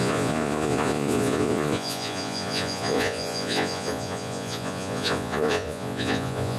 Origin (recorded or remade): remade